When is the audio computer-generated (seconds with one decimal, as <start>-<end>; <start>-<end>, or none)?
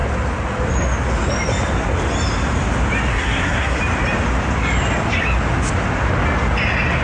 3.1-3.8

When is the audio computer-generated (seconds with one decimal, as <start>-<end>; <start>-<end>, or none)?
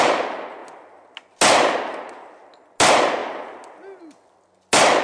none